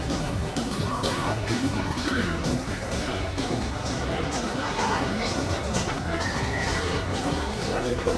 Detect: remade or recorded remade